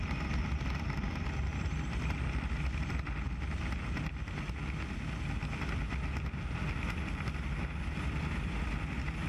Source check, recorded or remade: recorded